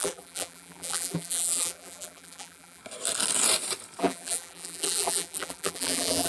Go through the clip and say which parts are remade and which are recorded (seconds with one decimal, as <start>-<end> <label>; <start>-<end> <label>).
0.0-2.8 remade; 2.8-4.0 recorded; 4.0-6.3 remade